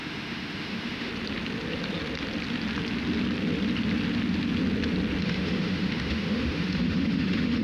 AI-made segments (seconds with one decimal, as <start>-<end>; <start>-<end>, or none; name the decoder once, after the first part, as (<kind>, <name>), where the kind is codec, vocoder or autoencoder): 0.0-1.1 (autoencoder, DAC-VAE); 5.2-7.6